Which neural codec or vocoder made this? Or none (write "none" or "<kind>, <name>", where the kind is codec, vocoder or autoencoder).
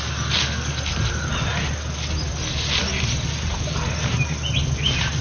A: none